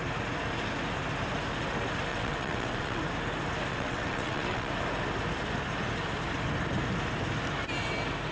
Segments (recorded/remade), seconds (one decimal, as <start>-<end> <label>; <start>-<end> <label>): 0.0-2.1 recorded; 2.1-3.0 remade; 3.0-3.7 recorded; 3.7-4.7 remade; 4.7-8.3 recorded

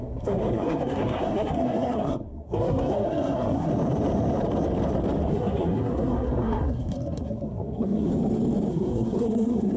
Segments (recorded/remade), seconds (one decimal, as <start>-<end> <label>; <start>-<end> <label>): 0.0-3.7 remade; 3.7-5.3 recorded; 5.3-8.1 remade; 8.1-8.7 recorded; 8.7-9.8 remade